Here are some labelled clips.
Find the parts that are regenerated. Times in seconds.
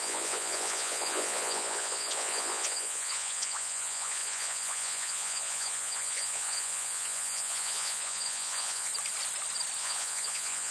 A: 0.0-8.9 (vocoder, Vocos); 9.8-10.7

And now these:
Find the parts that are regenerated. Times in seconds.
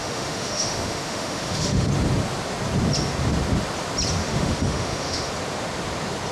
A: 0.0-1.9 (autoencoder, DAC-VAE); 4.2-5.3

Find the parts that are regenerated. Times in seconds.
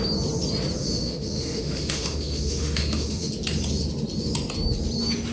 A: 0.8-3.3 (autoencoder, DAC-VAE)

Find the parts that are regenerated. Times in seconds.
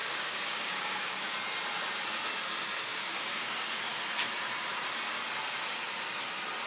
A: 0.0-1.3 (codec, DAC); 2.9-3.7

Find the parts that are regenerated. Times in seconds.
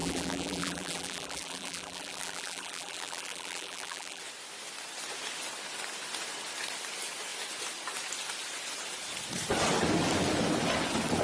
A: 0.0-4.2 (vocoder, BigVGAN v2)